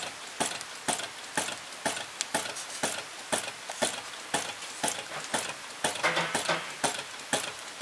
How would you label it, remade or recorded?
recorded